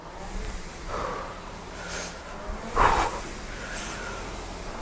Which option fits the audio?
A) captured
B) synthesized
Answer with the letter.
A